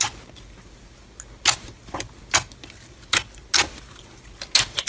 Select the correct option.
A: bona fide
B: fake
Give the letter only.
A